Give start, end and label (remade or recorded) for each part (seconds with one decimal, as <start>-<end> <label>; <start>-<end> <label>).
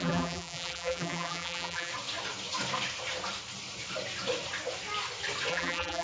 0.0-1.9 remade; 1.9-5.5 recorded; 5.5-6.0 remade